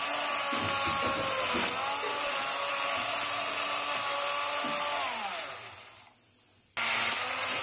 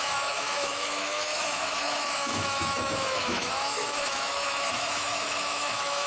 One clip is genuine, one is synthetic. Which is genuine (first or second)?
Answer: first